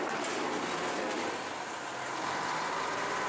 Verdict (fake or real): real